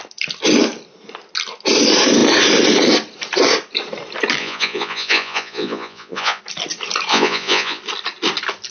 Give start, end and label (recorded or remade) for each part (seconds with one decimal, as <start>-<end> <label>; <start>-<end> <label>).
0.0-4.4 recorded; 4.4-6.4 remade; 6.4-7.1 recorded; 7.1-7.8 remade; 7.8-8.7 recorded